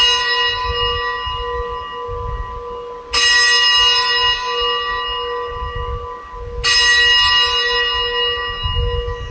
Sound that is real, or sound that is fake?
real